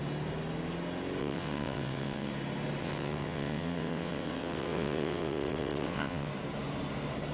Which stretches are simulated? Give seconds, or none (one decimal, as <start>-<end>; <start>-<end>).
1.2-2.3; 2.8-6.3